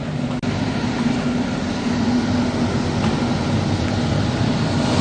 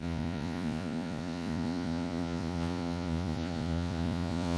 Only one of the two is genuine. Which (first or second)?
first